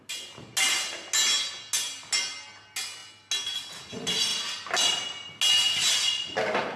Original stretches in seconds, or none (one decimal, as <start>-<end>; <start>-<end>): 0.0-6.8

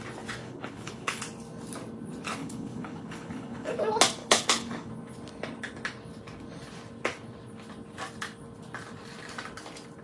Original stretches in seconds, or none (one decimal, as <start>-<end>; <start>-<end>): 0.0-0.4; 1.2-2.4; 3.8-4.2; 4.9-10.0

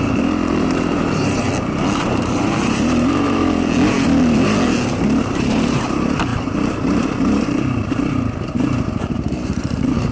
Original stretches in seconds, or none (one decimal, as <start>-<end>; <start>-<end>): 1.5-2.0; 3.4-4.9

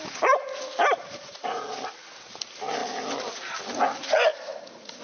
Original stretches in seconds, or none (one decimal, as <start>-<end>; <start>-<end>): 0.0-1.0; 1.6-4.3

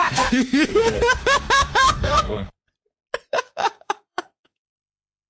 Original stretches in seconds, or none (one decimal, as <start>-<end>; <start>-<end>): 2.5-3.3

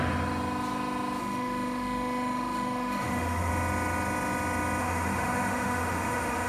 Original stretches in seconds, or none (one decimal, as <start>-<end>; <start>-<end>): 0.0-1.2; 3.5-4.8

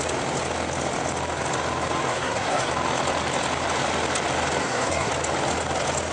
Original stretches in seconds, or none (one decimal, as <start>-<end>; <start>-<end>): 0.0-2.1; 2.7-4.6; 5.1-6.1

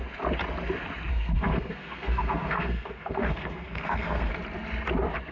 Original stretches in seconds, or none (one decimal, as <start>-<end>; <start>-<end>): 0.0-1.1; 4.3-5.3